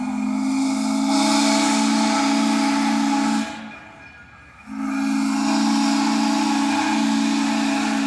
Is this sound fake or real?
real